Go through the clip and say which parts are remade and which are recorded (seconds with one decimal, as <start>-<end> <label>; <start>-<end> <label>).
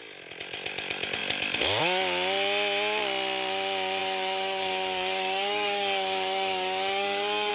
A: 0.0-4.0 recorded; 4.0-7.5 remade